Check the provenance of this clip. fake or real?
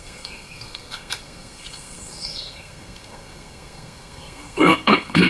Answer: fake